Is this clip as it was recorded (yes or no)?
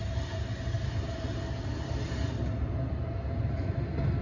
yes